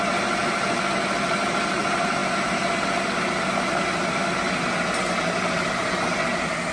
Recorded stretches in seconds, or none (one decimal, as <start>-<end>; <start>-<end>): 0.0-6.7